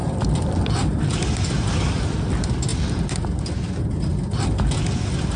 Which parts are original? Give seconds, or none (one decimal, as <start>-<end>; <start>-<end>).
1.1-5.4